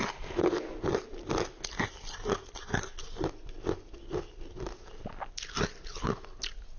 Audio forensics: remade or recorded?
recorded